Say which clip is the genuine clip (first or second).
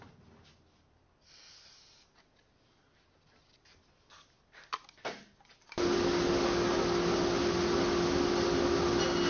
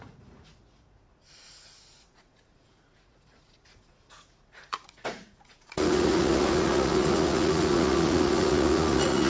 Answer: first